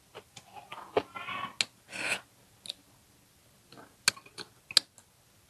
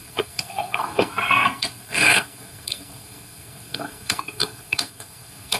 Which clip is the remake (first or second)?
second